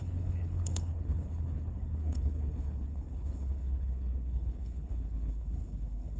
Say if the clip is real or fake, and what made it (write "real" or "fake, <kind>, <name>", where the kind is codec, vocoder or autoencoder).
fake, codec, HILCodec